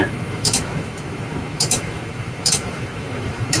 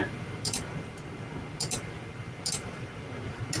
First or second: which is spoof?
first